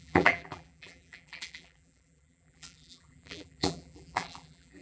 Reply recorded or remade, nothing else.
remade